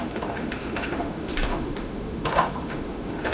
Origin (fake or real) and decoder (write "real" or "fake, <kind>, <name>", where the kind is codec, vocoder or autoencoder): fake, autoencoder, DAC-VAE